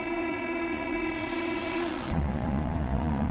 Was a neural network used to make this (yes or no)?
yes